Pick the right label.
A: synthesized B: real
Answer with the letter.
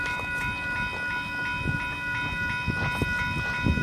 B